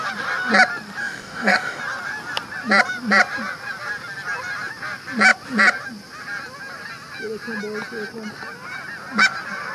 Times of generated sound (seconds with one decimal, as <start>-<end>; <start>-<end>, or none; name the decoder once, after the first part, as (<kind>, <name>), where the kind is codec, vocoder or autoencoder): 1.0-1.8 (codec, DAC)